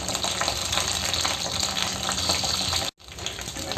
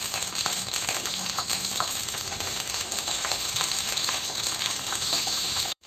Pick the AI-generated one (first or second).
second